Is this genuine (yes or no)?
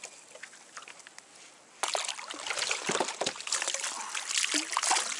yes